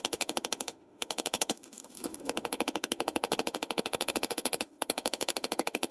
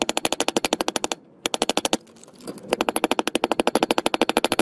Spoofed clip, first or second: first